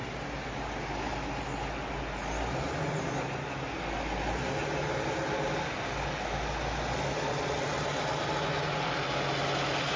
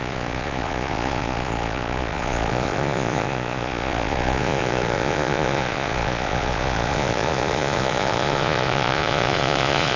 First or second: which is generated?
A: second